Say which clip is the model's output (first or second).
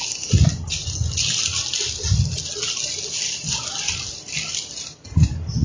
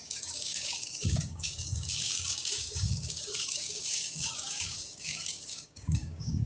second